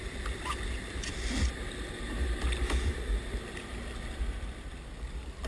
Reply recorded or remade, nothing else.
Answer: recorded